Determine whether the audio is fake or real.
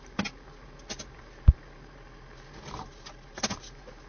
real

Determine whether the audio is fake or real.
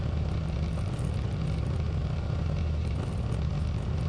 real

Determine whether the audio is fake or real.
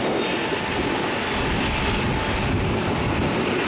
real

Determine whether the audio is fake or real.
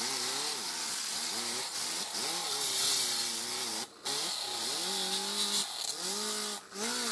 real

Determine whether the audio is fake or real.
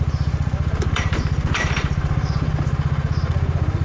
fake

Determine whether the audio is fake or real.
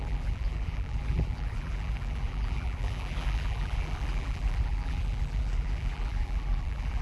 fake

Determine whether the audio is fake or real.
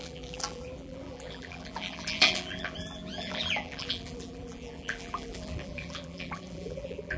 fake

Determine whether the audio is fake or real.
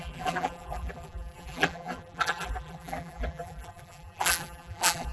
fake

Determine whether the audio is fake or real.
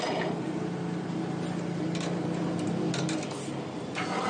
real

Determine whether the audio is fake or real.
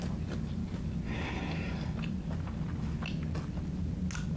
real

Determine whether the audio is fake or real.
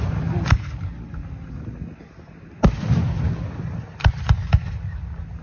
real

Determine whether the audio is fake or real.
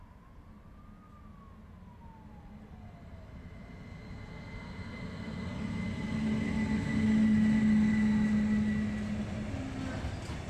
real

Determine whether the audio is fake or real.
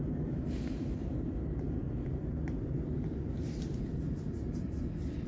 fake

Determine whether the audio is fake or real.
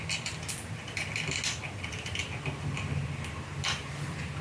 real